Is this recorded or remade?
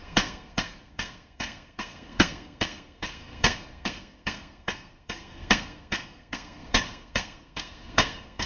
remade